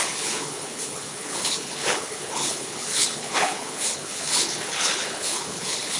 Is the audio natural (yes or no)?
no